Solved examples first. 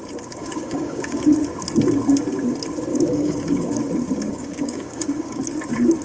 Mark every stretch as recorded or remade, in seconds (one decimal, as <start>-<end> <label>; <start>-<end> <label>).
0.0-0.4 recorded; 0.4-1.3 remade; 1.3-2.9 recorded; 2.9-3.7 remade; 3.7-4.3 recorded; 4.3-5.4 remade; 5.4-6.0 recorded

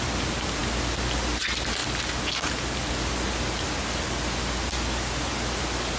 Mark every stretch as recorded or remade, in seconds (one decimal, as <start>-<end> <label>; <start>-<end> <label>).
0.0-6.0 recorded

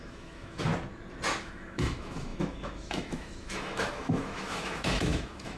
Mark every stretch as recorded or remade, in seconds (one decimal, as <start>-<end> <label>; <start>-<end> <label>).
0.0-0.7 remade; 0.7-1.4 recorded; 1.4-5.6 remade

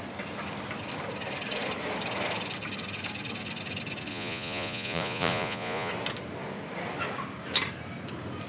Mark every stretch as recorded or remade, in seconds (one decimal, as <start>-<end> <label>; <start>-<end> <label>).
0.0-4.1 recorded; 4.1-5.9 remade; 5.9-8.5 recorded

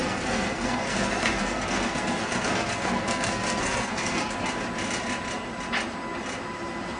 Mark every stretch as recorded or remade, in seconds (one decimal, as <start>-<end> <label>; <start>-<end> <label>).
0.0-4.2 remade; 4.2-7.0 recorded